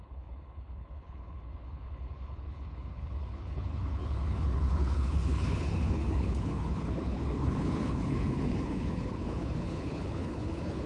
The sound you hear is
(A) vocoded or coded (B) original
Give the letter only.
A